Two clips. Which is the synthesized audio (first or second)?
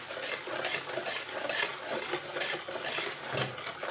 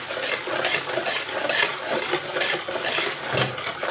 second